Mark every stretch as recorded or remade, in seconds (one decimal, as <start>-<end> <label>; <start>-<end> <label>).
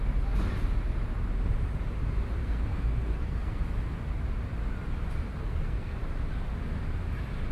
0.0-2.4 recorded; 2.4-3.6 remade; 3.6-5.4 recorded; 5.4-6.0 remade; 6.0-7.5 recorded